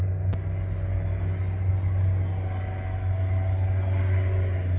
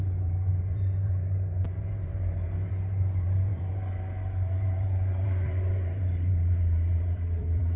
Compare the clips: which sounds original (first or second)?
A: first